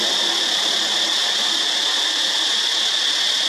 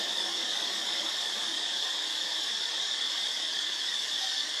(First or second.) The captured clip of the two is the first